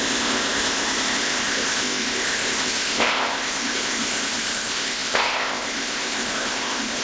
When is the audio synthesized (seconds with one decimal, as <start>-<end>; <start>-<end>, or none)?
0.0-7.0